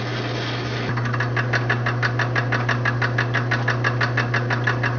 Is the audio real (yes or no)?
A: yes